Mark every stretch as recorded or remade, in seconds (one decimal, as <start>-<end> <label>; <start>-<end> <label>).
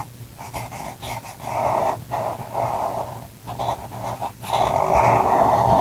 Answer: 0.0-5.8 recorded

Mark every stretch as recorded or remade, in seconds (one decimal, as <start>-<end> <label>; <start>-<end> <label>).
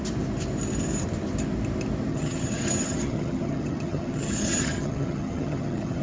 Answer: 0.0-2.1 recorded; 2.1-6.0 remade